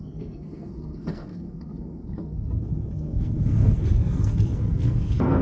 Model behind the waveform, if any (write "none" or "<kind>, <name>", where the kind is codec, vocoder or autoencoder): codec, SNAC